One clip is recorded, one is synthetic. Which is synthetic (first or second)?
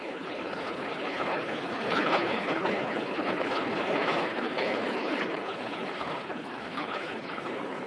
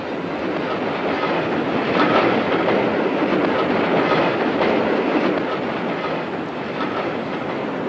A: first